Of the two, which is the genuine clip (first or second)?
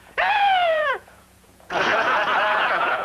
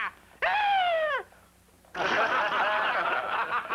second